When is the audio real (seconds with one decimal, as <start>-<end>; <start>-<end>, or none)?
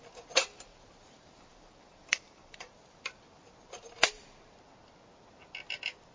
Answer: 0.0-0.7; 3.2-6.1